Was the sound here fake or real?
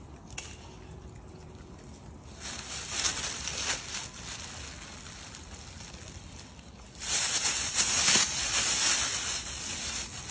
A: real